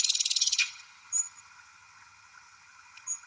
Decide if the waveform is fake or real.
fake